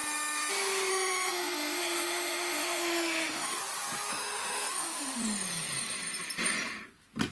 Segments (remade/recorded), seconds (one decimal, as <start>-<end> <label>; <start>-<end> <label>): 0.0-0.5 remade; 0.5-0.9 recorded; 0.9-3.6 remade; 3.6-4.1 recorded; 4.1-5.2 remade; 5.2-7.3 recorded